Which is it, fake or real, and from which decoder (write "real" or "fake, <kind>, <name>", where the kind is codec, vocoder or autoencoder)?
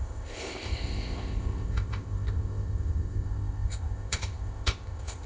fake, codec, ZipCodec